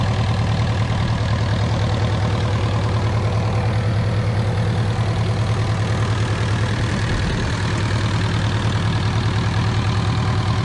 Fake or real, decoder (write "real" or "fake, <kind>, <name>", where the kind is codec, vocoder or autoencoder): real